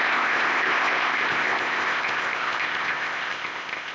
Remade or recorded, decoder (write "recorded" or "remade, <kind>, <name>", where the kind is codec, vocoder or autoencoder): remade, codec, ZipCodec